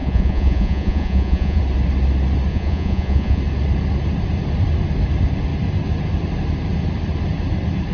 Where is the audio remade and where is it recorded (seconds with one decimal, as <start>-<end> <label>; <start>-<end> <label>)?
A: 0.0-1.6 remade; 1.6-2.5 recorded; 2.5-3.4 remade; 3.4-7.9 recorded